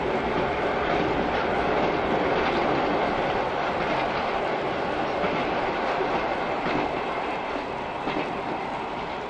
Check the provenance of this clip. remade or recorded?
recorded